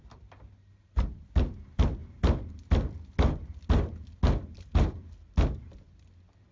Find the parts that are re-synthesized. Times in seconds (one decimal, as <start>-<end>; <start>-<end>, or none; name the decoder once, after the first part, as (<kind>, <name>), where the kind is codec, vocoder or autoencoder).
none